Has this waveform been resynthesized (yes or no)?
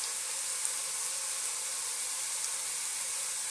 no